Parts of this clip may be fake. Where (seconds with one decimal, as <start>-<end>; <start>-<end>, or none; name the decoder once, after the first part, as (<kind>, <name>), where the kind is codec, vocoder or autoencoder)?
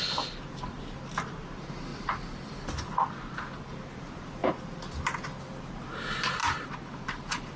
none